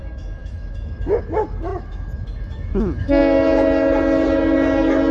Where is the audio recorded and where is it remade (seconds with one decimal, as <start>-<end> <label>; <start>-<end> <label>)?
0.0-3.2 remade; 3.2-5.1 recorded